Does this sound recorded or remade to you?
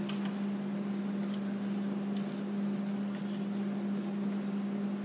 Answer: recorded